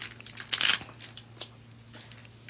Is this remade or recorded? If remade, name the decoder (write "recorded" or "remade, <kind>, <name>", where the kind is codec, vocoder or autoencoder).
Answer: recorded